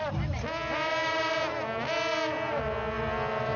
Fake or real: real